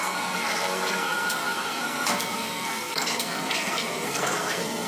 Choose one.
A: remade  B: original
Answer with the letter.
A